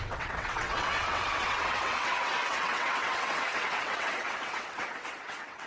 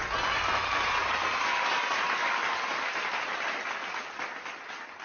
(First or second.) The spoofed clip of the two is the first